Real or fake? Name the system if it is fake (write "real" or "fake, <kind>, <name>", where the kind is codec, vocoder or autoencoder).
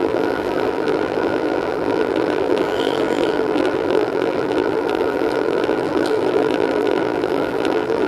fake, vocoder, BigVGAN v2